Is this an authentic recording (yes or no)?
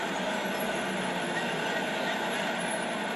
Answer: yes